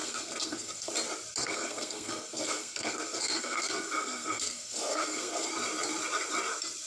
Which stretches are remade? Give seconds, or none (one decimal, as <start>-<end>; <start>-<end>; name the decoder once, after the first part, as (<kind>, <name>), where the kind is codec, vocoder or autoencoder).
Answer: 0.0-0.9 (codec, SNAC); 1.4-5.5